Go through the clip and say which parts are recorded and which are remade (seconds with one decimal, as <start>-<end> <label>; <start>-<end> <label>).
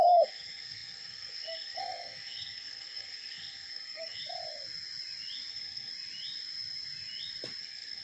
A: 0.0-4.2 remade; 4.2-5.5 recorded; 5.5-5.9 remade; 5.9-7.6 recorded; 7.6-8.0 remade